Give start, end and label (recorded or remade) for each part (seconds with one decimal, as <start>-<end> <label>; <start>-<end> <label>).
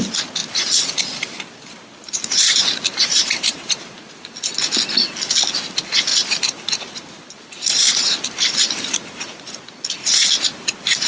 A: 0.0-0.4 recorded; 0.4-4.4 remade; 4.4-6.1 recorded; 6.1-9.6 remade; 9.6-11.1 recorded